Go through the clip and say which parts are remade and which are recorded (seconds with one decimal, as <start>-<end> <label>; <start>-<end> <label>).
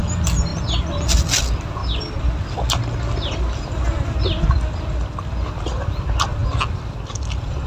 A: 0.0-7.7 recorded